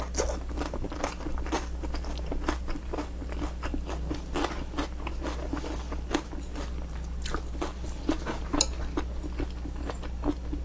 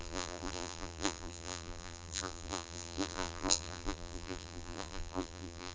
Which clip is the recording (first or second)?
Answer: first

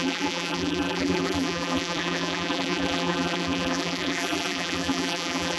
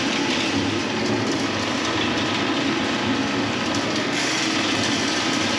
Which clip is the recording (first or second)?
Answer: second